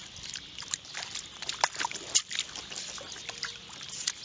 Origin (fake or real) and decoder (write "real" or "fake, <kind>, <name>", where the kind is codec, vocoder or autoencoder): real